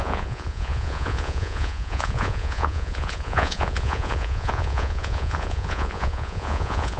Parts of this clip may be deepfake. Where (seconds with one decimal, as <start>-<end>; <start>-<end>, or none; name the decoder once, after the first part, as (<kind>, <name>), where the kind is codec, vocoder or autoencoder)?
0.0-7.0 (vocoder, Vocos)